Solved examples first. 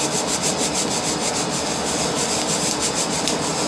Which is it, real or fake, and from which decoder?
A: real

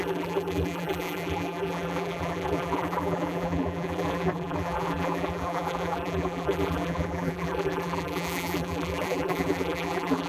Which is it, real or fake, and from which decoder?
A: fake, vocoder, BigVGAN v2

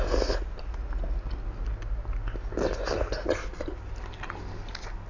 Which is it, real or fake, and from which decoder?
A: real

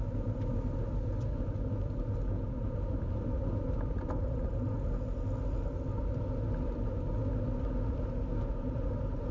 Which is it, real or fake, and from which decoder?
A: real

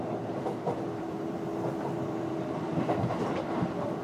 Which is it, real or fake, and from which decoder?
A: fake, vocoder, BigVGAN v2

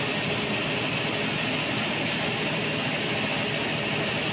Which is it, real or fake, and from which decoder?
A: real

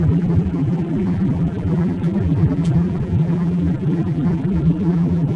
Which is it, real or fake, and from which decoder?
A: fake, vocoder, BigVGAN v2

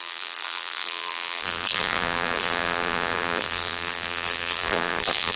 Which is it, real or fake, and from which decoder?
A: fake, vocoder, BigVGAN v2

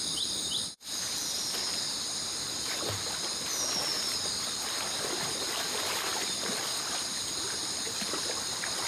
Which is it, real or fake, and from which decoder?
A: fake, vocoder, BigVGAN v2